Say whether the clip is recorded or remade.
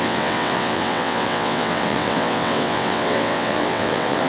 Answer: remade